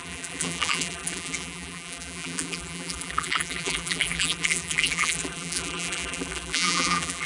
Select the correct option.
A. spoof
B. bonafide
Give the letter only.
A